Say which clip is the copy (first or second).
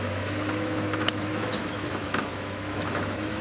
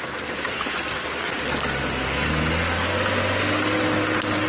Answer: first